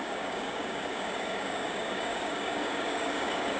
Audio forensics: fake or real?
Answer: fake